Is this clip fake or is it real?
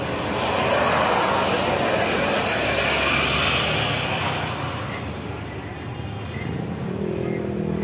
real